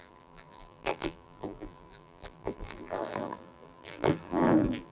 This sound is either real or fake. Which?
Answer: fake